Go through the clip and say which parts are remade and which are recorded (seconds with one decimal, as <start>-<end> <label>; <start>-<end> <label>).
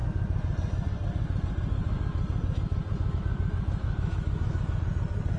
0.0-3.8 recorded; 3.8-4.8 remade; 4.8-5.4 recorded